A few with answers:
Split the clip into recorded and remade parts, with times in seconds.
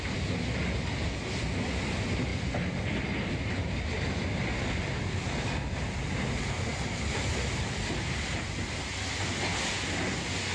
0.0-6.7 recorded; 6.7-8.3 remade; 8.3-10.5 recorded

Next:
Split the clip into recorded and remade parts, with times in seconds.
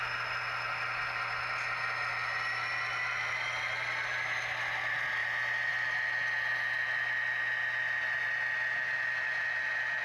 0.0-10.0 recorded